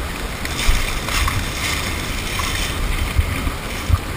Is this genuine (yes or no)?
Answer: yes